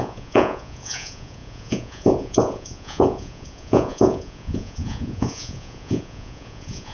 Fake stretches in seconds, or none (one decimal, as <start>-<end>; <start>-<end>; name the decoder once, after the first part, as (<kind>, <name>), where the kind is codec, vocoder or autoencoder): 0.0-6.9 (vocoder, Vocos)